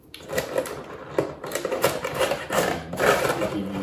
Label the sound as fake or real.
real